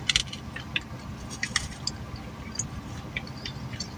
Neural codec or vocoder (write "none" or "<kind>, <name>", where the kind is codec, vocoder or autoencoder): none